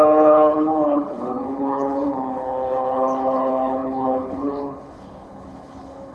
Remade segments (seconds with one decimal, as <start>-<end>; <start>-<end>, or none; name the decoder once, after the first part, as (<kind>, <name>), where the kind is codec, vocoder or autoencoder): 0.0-6.1 (codec, HILCodec)